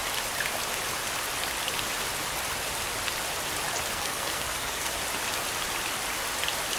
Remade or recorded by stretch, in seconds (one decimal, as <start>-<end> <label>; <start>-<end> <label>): 0.0-3.9 recorded; 3.9-5.0 remade; 5.0-6.8 recorded